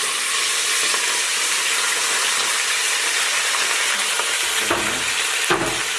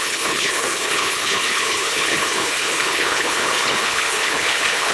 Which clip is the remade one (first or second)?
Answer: second